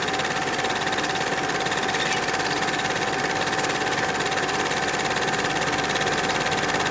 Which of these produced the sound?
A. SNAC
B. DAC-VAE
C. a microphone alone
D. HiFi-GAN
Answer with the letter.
C